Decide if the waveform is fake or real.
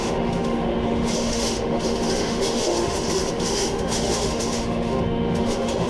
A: fake